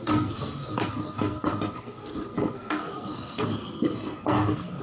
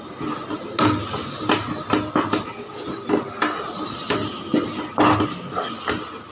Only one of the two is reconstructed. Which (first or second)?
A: first